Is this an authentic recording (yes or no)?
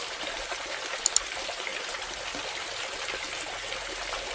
yes